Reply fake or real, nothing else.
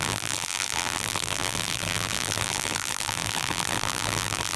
fake